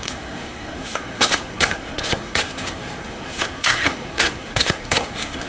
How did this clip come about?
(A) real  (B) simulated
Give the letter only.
B